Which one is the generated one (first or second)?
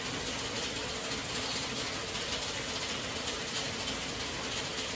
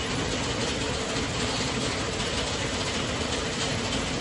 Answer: second